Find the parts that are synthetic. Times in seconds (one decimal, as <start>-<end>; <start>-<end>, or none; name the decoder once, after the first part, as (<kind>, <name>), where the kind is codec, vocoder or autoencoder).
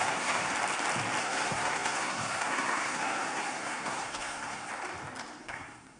0.0-0.4 (codec, SNAC); 1.2-4.7; 5.4-6.0